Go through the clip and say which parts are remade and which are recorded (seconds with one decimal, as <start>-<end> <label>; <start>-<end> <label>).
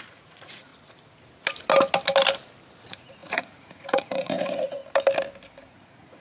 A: 0.0-0.7 remade; 0.7-2.8 recorded; 2.8-4.8 remade; 4.8-5.7 recorded; 5.7-6.2 remade